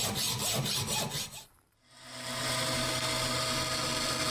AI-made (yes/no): no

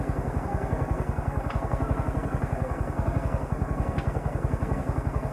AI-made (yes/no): yes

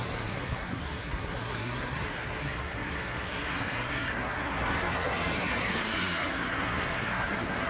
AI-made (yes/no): yes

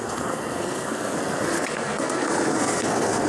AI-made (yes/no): yes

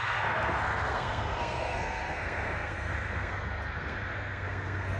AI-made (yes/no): yes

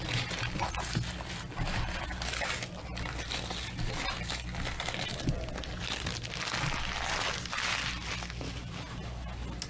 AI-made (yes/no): no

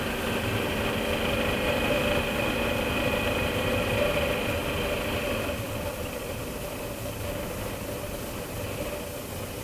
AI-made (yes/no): no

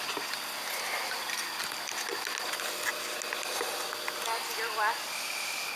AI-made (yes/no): no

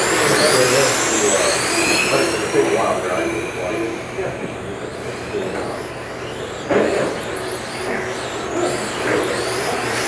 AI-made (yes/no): no